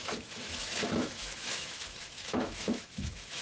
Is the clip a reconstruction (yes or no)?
yes